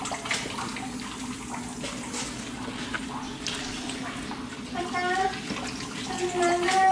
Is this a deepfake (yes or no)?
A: no